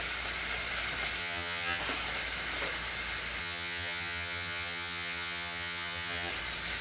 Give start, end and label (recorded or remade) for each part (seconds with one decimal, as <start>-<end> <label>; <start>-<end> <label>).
0.0-1.2 recorded; 1.2-1.8 remade; 1.8-3.4 recorded; 3.4-6.3 remade; 6.3-6.8 recorded